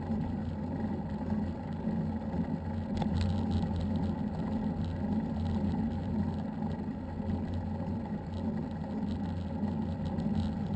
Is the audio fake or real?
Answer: real